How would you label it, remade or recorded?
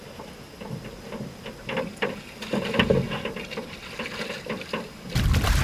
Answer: recorded